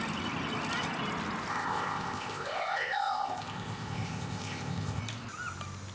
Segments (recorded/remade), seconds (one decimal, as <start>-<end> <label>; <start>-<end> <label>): 0.0-1.5 recorded; 1.5-5.0 remade; 5.0-5.9 recorded